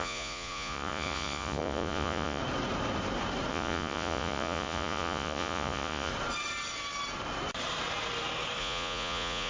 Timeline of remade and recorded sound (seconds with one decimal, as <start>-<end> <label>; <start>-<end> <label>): 0.0-2.4 remade; 2.4-3.5 recorded; 3.5-6.1 remade; 6.1-8.6 recorded; 8.6-9.5 remade